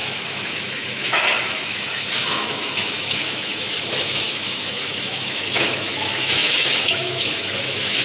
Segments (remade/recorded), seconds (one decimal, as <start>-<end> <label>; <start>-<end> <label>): 0.0-8.0 remade

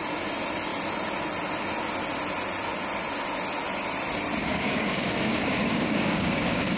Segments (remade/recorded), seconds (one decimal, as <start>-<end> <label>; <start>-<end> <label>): 0.0-4.4 recorded; 4.4-6.8 remade